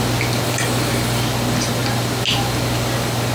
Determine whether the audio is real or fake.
real